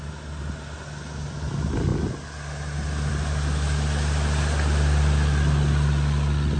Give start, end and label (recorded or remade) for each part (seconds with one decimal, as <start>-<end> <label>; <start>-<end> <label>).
0.0-6.6 recorded